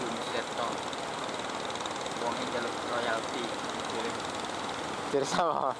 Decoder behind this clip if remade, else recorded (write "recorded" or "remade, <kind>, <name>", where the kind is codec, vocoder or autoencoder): recorded